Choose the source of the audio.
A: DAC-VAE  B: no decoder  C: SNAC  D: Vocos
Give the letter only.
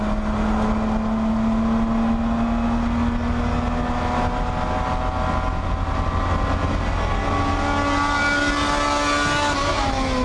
B